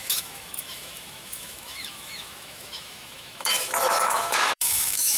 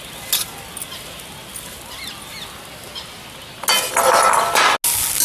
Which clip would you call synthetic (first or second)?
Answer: first